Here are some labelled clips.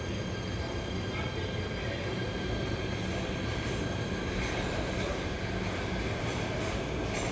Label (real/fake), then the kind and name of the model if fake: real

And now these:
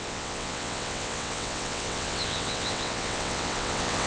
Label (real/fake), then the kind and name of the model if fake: fake, vocoder, WaveNeXt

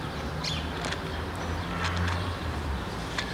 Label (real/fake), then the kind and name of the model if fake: real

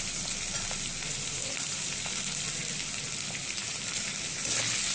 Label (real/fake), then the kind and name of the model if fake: real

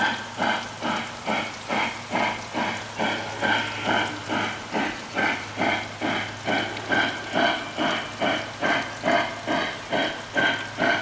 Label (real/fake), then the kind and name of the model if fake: real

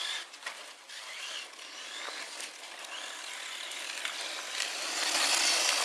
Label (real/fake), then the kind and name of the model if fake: real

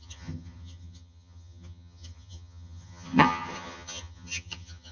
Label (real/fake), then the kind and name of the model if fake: fake, vocoder, HiFi-GAN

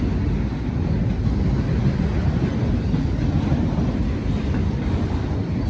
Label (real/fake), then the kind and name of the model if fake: real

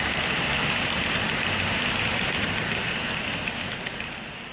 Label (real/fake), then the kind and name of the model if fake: real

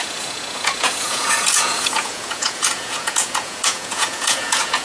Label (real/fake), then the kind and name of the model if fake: fake, vocoder, Vocos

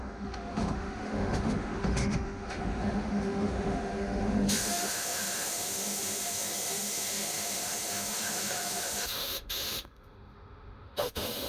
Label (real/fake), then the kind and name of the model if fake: fake, autoencoder, DAC-VAE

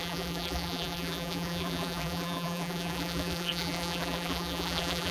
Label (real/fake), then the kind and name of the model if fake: fake, vocoder, BigVGAN v2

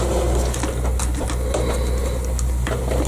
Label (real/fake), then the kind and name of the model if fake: real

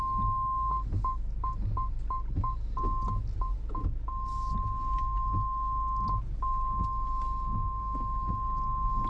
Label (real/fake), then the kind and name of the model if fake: real